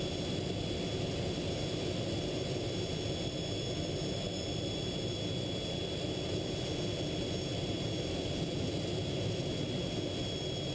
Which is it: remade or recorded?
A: recorded